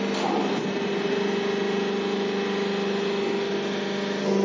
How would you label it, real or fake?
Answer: real